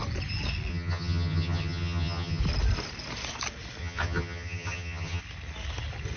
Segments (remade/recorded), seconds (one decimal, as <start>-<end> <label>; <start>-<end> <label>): 0.0-0.7 recorded; 0.7-2.4 remade; 2.4-3.8 recorded; 3.8-5.2 remade; 5.2-6.2 recorded